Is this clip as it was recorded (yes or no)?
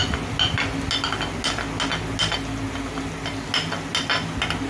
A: yes